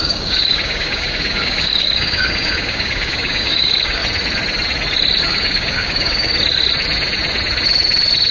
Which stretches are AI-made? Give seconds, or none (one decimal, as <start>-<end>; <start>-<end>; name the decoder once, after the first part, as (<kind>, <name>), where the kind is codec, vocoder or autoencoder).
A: 0.0-4.0 (codec, DAC); 5.2-6.3